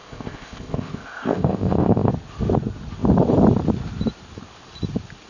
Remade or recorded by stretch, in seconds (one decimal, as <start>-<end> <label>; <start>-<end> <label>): 0.0-2.1 remade; 2.1-5.3 recorded